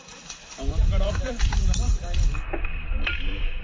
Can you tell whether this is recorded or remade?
remade